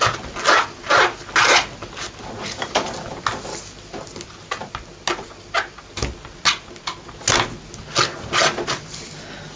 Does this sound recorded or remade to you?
recorded